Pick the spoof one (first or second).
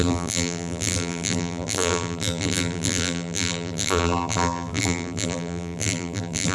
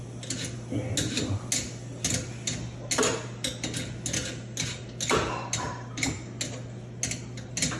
first